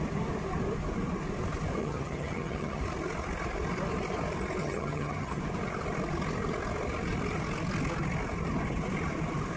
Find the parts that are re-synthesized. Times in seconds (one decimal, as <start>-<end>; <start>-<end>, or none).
1.8-2.8; 4.6-5.4